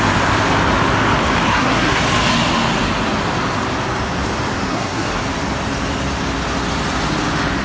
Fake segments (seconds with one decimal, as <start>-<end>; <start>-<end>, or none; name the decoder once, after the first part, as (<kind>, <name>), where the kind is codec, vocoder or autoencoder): 1.5-2.0 (codec, SNAC); 4.7-5.2